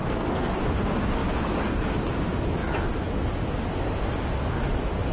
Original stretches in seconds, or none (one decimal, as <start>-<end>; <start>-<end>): 0.6-5.1